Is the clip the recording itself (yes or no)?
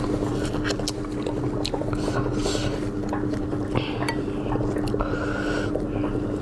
yes